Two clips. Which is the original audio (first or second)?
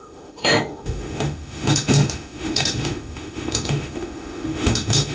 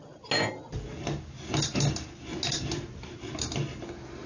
second